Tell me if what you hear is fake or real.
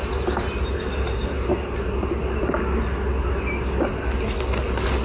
real